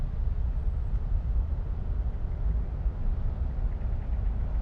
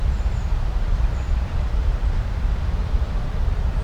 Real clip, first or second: first